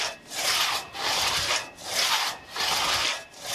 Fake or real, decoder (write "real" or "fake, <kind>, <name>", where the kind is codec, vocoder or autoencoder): real